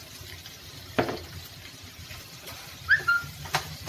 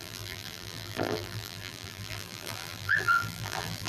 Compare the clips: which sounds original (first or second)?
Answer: first